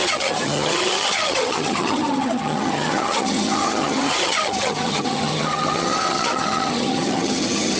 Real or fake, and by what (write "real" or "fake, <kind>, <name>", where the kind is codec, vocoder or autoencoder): fake, vocoder, HiFi-GAN